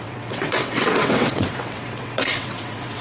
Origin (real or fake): fake